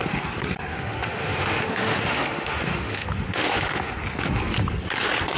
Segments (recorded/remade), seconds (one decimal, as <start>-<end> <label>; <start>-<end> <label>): 0.0-0.7 recorded; 0.7-3.9 remade; 3.9-5.4 recorded